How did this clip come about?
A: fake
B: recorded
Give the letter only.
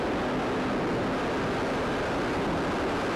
B